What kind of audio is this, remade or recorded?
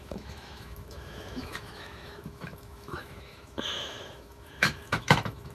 remade